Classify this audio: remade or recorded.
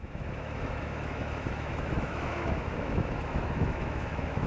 remade